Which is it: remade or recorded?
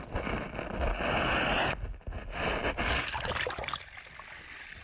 recorded